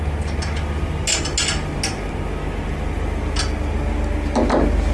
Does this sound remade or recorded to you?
recorded